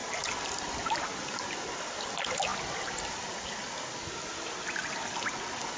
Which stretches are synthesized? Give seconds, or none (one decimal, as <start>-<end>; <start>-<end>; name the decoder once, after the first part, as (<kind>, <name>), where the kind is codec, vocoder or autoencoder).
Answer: none